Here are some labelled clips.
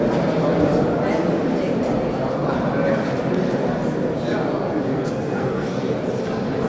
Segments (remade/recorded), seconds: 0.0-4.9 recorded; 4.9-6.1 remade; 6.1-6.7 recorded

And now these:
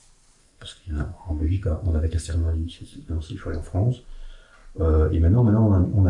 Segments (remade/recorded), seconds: 0.0-0.4 recorded; 0.4-3.1 remade; 3.1-6.1 recorded

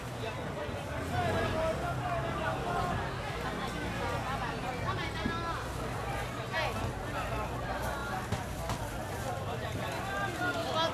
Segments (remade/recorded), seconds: 0.0-10.9 recorded

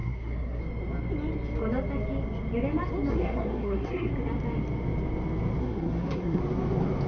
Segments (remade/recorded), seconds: 0.0-0.6 remade; 0.6-3.1 recorded; 3.1-4.1 remade; 4.1-5.6 recorded; 5.6-6.4 remade; 6.4-7.1 recorded